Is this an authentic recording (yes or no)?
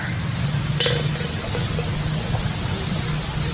yes